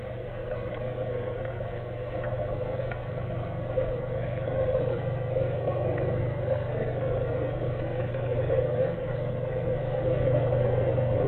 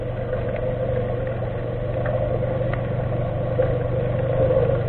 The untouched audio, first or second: second